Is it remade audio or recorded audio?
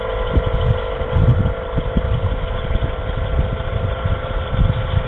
recorded